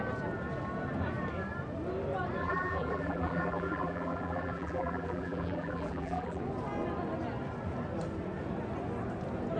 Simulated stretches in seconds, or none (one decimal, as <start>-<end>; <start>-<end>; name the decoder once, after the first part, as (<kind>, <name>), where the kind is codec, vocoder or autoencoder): 2.4-6.4 (vocoder, BigVGAN v2)